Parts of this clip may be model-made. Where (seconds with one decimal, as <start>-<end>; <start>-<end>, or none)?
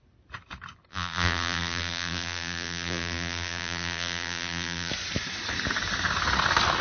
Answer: 0.9-4.9